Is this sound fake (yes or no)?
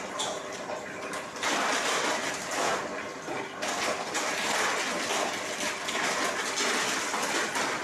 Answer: no